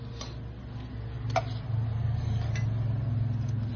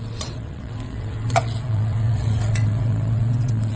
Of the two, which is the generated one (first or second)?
second